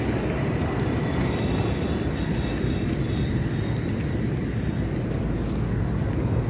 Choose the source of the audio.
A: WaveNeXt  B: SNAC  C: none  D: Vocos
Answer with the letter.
C